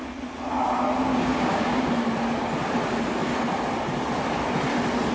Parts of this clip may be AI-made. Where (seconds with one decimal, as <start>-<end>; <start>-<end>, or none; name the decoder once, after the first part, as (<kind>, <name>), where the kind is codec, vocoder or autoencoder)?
1.1-1.9 (codec, DAC)